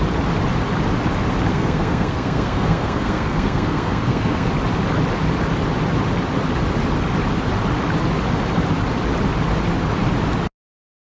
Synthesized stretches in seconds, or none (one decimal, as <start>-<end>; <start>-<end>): 1.5-4.5